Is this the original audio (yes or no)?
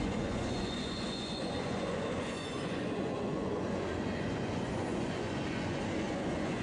no